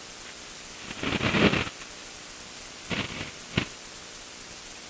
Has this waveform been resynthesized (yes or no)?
no